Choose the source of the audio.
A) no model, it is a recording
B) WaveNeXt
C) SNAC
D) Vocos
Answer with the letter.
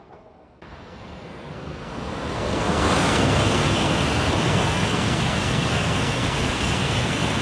C